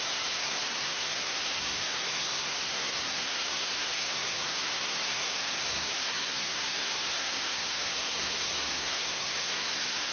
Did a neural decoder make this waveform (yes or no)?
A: yes